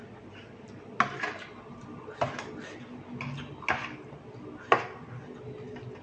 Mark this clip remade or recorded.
recorded